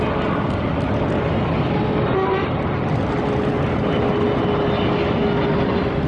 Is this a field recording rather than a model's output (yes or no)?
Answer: yes